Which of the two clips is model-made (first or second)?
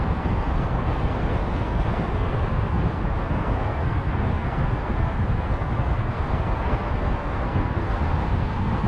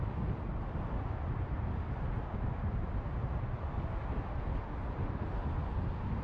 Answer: first